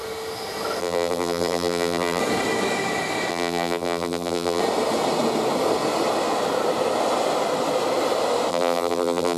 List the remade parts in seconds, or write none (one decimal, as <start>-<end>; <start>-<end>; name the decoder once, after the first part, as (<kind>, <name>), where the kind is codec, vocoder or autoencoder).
0.8-2.2 (vocoder, BigVGAN v2); 3.3-4.6; 8.5-9.4